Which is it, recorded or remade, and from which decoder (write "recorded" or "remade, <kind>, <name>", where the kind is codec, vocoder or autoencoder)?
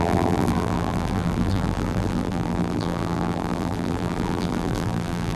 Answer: remade, vocoder, BigVGAN v2